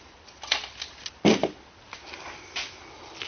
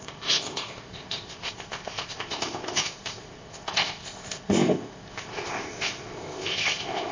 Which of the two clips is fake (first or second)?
second